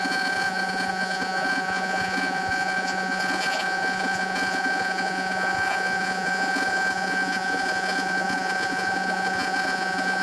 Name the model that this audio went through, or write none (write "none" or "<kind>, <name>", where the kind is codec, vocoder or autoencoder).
vocoder, Vocos